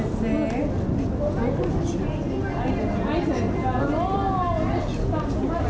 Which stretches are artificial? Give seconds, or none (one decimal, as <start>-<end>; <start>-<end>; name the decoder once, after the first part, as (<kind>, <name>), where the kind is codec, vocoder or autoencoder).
none